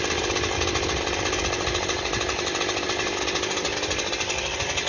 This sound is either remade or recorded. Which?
recorded